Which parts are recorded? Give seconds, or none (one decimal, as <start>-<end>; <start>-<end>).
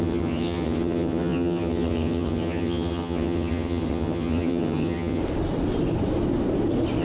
5.2-7.0